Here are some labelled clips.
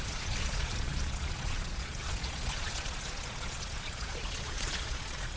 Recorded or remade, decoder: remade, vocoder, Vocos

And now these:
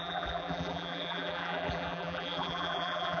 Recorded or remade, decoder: remade, vocoder, BigVGAN v2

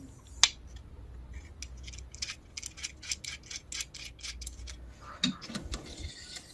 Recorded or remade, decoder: recorded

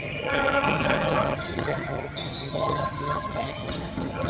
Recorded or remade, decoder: remade, vocoder, HiFi-GAN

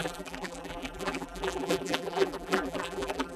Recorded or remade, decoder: remade, vocoder, BigVGAN v2